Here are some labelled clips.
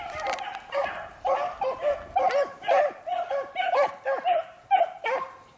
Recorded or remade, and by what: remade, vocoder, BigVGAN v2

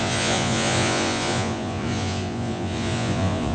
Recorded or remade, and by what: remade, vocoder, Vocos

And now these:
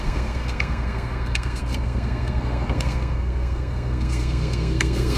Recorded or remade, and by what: remade, codec, SNAC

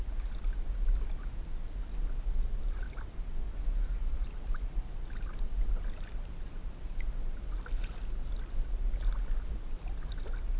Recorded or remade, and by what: recorded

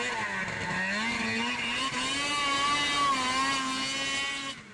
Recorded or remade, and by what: recorded